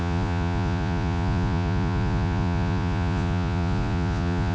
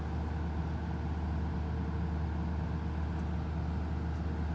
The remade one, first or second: first